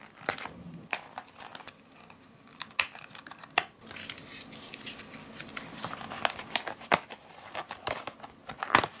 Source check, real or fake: real